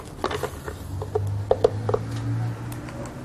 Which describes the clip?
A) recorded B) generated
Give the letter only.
A